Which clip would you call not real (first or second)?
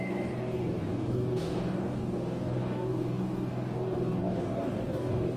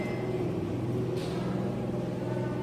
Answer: first